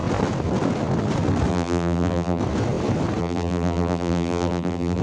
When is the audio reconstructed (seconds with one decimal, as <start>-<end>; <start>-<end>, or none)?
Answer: 1.5-2.4; 3.2-5.0